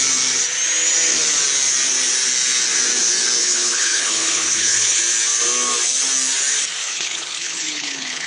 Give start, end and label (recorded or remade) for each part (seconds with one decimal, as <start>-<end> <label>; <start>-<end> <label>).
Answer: 0.0-3.4 recorded; 3.4-5.0 remade; 5.0-6.8 recorded; 6.8-8.3 remade